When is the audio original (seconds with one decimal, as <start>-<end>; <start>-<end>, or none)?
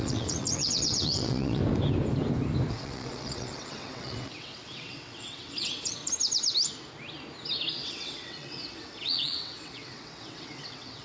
1.6-2.7; 6.0-7.7